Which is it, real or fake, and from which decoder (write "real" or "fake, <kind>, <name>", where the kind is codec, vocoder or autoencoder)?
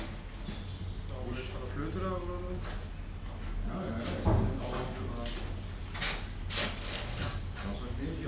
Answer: real